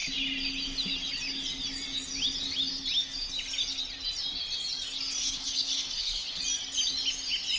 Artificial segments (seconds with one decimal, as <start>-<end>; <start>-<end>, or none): 5.2-6.4

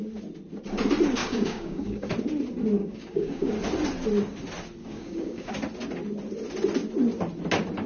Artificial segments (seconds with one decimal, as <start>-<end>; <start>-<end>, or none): 1.2-2.1; 2.8-3.5; 4.8-5.5